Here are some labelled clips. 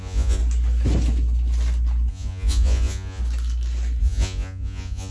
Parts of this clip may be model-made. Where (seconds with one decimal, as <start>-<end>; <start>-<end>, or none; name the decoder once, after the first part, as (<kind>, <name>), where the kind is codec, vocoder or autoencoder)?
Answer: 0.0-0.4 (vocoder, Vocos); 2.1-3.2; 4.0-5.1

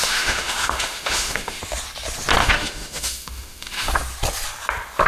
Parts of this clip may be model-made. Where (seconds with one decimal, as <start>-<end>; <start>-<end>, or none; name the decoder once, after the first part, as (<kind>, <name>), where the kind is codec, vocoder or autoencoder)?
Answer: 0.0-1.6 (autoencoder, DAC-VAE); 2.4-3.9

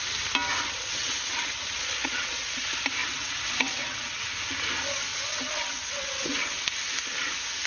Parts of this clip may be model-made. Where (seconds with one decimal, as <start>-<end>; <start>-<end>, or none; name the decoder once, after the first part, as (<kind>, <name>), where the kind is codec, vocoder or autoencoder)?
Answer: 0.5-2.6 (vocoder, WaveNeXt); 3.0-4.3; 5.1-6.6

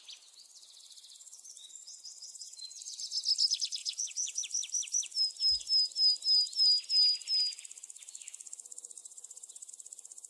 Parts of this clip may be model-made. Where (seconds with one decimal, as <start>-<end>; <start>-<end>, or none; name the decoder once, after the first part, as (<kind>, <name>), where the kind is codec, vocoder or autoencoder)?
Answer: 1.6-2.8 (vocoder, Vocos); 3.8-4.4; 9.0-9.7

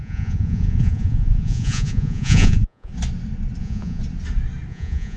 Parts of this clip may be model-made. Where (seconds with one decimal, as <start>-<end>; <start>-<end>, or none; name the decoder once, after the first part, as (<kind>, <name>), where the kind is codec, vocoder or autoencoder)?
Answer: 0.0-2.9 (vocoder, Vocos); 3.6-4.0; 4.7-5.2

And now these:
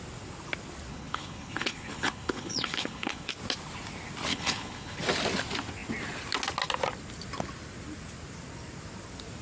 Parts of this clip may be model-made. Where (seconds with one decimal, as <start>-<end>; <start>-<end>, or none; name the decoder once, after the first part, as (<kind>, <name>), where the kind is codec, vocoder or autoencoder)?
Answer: 0.9-3.3 (codec, HILCodec); 4.3-5.0

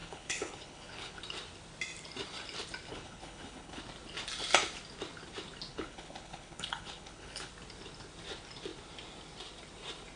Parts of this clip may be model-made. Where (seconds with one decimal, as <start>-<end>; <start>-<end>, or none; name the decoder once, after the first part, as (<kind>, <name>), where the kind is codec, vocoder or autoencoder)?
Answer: 0.0-1.2 (codec, HILCodec); 2.9-3.8; 5.7-7.5

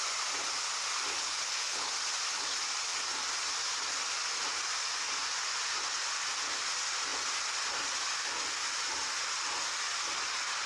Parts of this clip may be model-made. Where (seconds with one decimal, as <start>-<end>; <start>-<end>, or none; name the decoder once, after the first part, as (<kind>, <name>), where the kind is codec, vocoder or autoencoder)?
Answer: 1.1-1.9 (codec, HILCodec)